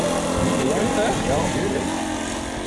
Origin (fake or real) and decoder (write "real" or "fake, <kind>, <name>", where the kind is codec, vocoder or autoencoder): real